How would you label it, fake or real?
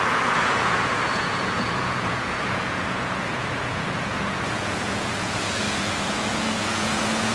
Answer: fake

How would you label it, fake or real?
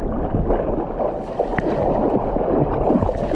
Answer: real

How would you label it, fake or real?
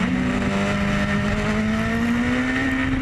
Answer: real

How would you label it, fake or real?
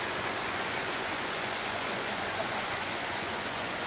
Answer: fake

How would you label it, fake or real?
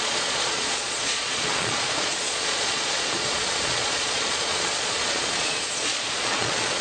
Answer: fake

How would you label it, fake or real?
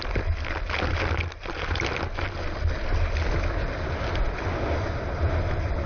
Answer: real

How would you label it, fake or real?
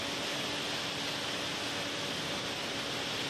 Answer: real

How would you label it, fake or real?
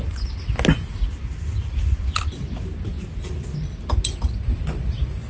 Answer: real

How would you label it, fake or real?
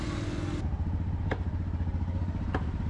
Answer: real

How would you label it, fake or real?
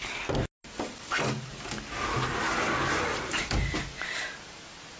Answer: real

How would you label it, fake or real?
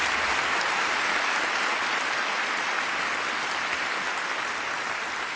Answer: real